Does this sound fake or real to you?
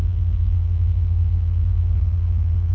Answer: fake